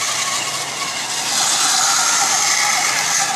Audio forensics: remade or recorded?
recorded